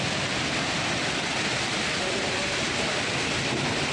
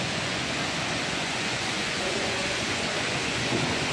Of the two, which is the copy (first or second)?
second